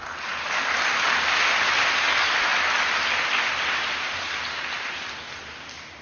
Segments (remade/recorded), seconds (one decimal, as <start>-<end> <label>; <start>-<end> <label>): 0.0-6.0 recorded